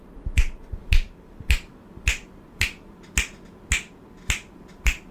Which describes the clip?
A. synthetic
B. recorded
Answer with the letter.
B